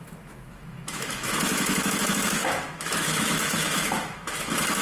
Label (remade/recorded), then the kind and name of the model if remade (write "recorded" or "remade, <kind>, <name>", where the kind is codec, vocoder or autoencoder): remade, autoencoder, DAC-VAE